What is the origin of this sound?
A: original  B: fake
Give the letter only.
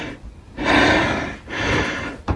A